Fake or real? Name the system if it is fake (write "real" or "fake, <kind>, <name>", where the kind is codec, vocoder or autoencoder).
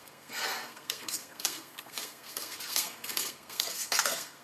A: fake, codec, SNAC